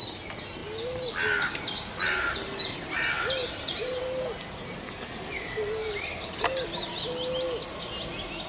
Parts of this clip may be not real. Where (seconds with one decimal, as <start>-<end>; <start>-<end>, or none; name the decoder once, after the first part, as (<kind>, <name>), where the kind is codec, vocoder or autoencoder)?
3.4-4.0 (vocoder, BigVGAN v2); 5.8-7.0

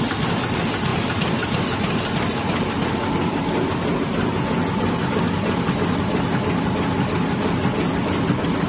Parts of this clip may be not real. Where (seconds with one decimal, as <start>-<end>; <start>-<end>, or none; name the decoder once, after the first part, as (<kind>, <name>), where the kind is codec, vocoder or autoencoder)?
none

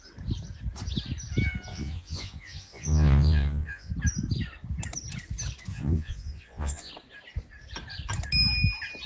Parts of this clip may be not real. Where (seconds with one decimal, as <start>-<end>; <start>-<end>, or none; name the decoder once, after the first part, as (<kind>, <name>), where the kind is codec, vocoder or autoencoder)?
1.7-3.9 (vocoder, Vocos); 5.7-6.9

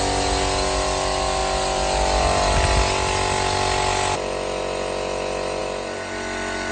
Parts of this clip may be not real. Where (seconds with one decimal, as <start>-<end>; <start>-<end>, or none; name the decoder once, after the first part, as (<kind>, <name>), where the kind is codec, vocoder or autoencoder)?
none

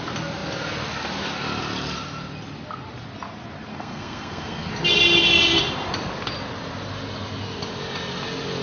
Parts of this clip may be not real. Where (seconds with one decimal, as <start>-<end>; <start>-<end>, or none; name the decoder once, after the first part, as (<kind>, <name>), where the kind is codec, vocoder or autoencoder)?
3.7-4.7 (codec, SNAC)

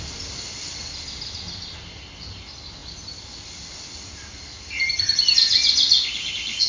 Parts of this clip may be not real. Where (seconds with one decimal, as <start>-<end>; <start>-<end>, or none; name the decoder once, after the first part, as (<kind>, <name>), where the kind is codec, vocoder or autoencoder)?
none

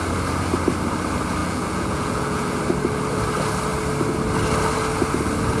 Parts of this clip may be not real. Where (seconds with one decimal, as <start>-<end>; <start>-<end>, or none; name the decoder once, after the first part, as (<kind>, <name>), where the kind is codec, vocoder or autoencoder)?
1.4-2.6 (vocoder, Vocos)